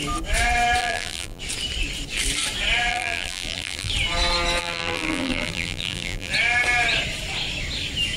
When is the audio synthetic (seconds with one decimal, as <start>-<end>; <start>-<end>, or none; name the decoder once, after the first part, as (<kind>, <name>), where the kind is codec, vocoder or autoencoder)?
0.8-1.4 (vocoder, BigVGAN v2); 2.9-3.9; 4.6-6.3